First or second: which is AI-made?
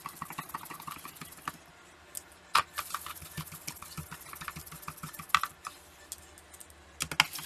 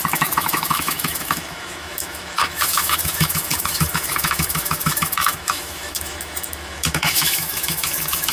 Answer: second